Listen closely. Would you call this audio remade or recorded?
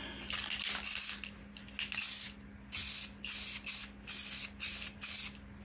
recorded